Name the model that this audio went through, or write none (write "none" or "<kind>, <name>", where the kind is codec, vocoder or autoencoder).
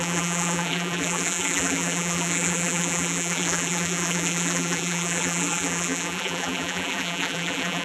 vocoder, BigVGAN v2